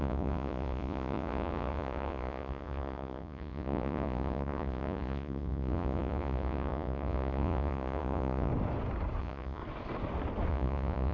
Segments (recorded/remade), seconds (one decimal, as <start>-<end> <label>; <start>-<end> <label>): 0.0-8.5 remade; 8.5-9.2 recorded; 9.2-9.6 remade; 9.6-10.5 recorded; 10.5-11.1 remade